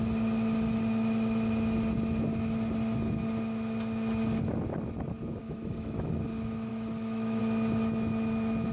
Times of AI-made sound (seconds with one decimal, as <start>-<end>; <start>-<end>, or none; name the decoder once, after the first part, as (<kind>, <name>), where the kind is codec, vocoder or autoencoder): 5.4-6.1 (autoencoder, DAC-VAE); 6.7-7.4